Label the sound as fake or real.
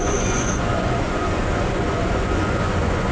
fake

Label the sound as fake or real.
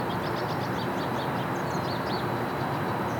real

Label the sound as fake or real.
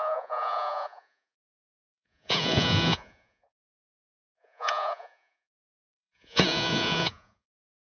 fake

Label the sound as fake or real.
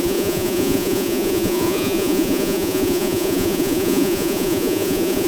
fake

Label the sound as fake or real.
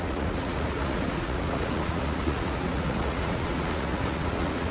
fake